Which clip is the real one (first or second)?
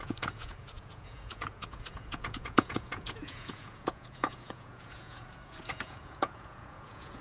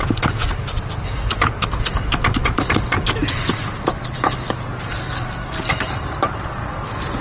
second